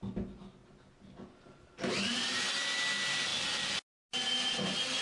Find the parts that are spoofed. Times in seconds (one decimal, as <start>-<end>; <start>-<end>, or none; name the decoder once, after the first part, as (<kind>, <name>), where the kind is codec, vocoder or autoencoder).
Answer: none

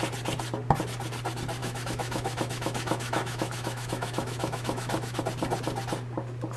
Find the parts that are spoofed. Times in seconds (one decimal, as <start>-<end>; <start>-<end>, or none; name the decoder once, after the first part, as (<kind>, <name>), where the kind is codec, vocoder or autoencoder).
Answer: 1.6-5.2 (autoencoder, DAC-VAE)

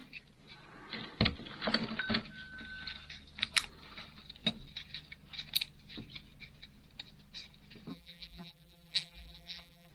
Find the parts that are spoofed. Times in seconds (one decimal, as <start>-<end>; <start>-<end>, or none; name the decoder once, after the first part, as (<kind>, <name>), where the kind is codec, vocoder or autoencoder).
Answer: 7.9-9.9 (vocoder, BigVGAN v2)

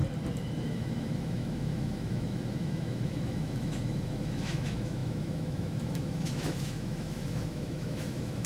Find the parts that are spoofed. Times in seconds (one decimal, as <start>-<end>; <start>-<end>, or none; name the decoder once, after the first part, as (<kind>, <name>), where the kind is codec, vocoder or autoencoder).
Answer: 0.6-8.5 (autoencoder, DAC-VAE)

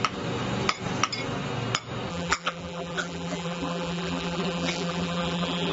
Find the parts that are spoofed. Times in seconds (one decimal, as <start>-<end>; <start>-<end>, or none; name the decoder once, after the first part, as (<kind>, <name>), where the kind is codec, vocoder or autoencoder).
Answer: 2.1-5.7 (vocoder, BigVGAN v2)

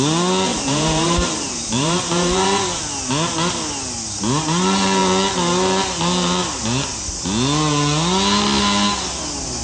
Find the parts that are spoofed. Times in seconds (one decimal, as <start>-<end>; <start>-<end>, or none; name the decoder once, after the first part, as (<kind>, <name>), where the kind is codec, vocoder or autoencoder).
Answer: 0.5-2.8 (vocoder, BigVGAN v2)

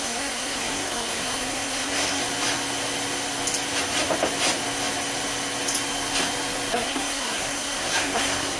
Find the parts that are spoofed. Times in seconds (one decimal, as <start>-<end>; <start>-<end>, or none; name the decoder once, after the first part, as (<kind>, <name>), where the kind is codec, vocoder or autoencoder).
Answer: 0.0-2.2 (codec, SNAC); 6.7-8.6